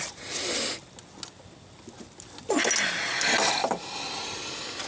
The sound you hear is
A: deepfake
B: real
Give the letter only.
B